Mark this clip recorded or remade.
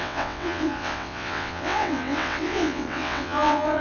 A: remade